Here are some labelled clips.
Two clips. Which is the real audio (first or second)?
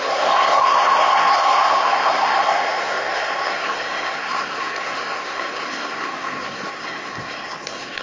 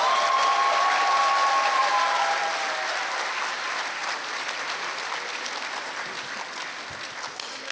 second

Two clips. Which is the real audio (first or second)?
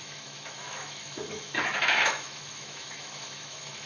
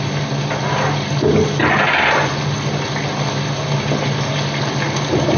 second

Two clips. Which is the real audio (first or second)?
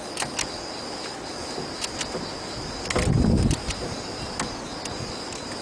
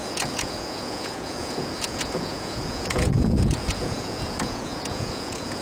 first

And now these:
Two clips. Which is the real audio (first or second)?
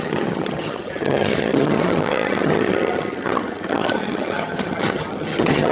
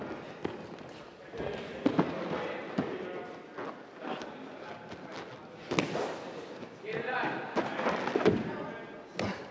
second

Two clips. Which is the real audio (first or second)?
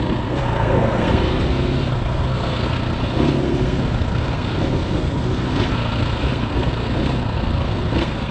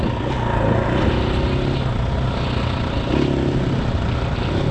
second